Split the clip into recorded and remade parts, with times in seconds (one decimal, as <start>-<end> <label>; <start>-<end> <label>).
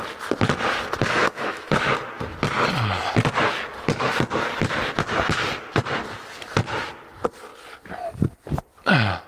0.0-1.2 recorded; 1.2-1.9 remade; 1.9-9.3 recorded